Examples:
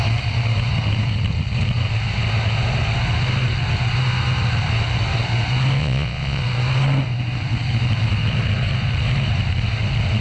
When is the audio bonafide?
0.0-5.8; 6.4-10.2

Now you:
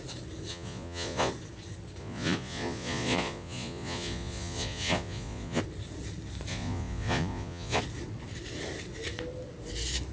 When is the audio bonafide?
0.0-0.5; 1.3-2.0; 5.6-6.5; 7.8-10.1